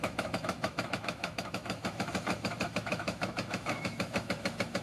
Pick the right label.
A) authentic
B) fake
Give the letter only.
B